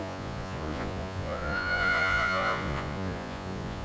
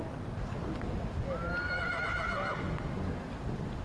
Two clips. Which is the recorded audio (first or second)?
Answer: second